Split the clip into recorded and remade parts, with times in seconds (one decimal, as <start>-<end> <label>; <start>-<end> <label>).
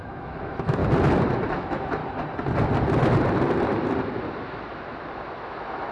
0.0-0.8 remade; 0.8-1.5 recorded; 1.5-2.0 remade; 2.0-5.5 recorded; 5.5-5.9 remade